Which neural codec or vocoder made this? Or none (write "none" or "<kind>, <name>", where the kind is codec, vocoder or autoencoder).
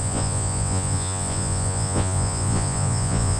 vocoder, Vocos